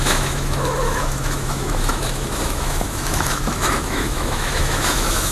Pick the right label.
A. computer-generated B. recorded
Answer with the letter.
A